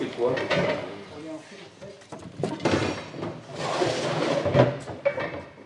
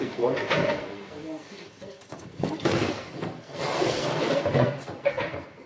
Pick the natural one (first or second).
first